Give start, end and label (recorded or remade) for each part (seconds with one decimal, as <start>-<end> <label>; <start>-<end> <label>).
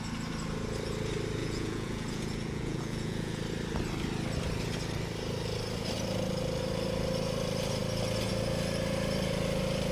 0.0-1.4 recorded; 1.4-3.4 remade; 3.4-9.9 recorded